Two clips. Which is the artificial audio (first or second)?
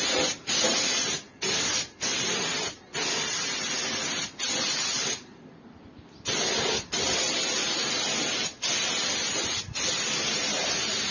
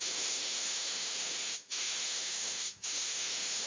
second